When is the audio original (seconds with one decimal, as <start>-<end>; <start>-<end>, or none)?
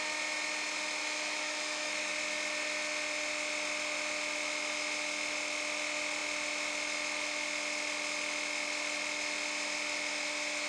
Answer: 0.0-1.0; 2.1-10.7